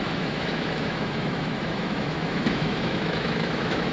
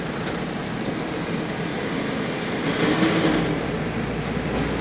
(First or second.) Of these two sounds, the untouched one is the second